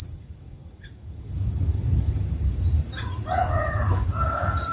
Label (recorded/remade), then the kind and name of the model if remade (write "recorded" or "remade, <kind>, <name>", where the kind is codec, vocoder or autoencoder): remade, vocoder, Vocos